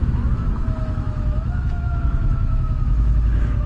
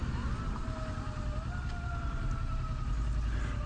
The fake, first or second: first